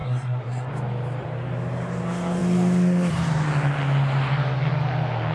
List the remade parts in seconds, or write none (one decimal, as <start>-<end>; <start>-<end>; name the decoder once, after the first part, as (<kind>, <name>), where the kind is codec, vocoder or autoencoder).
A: 0.0-0.7 (codec, SNAC)